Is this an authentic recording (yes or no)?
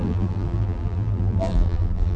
no